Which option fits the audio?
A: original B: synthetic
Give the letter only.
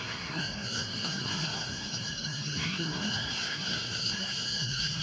B